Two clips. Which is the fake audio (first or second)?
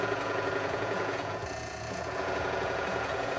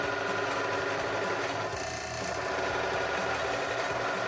first